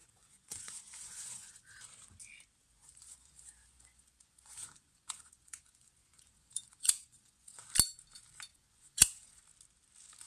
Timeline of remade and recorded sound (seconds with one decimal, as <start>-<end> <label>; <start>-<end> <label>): 0.0-1.8 remade; 1.8-2.6 recorded; 2.6-7.6 remade; 7.6-8.5 recorded; 8.5-9.4 remade; 9.4-10.3 recorded